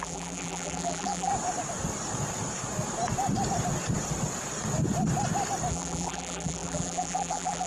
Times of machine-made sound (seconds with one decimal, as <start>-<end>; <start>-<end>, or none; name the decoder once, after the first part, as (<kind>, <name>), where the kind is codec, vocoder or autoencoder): 0.0-1.3 (vocoder, BigVGAN v2); 5.7-7.7